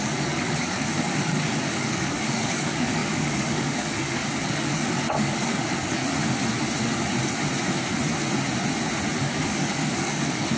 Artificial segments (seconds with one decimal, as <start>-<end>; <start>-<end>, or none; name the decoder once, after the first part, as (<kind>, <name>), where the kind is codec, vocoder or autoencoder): 0.0-6.0 (codec, DAC); 9.2-10.6